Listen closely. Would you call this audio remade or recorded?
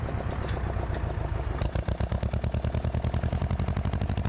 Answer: recorded